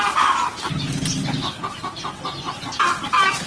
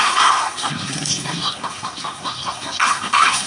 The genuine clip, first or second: first